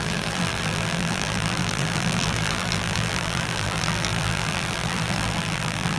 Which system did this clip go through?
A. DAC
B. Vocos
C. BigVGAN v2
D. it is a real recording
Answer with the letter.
C